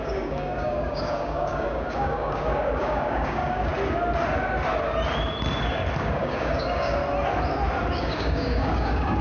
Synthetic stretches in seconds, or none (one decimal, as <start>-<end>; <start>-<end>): 0.0-3.7; 6.0-7.0; 8.0-9.2